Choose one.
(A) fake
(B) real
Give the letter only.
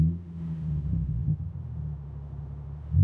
A